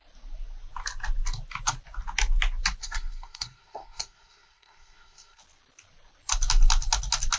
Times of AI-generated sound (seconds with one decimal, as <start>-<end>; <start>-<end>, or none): 2.8-5.4